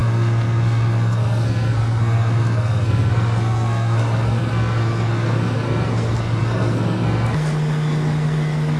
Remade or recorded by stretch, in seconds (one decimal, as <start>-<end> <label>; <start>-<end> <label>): 0.0-8.8 remade